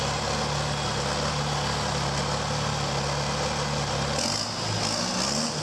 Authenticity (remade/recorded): recorded